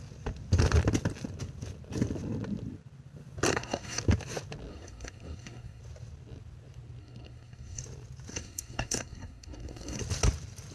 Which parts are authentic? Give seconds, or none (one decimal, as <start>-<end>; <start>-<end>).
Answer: 0.0-3.5; 4.0-4.7; 5.8-7.0; 7.8-8.3; 10.0-10.7